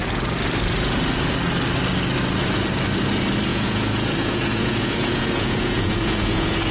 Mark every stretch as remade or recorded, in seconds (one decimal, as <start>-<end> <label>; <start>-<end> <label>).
0.0-3.5 recorded; 3.5-6.7 remade